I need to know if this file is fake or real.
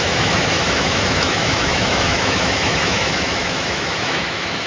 fake